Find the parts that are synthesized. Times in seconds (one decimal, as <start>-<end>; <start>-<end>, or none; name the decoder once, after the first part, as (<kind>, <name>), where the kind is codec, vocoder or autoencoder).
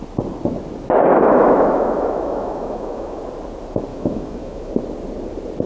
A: 1.1-3.2 (autoencoder, DAC-VAE); 3.9-4.7